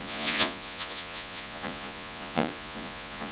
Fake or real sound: fake